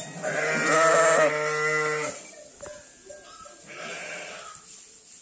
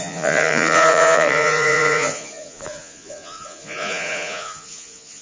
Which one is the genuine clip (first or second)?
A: first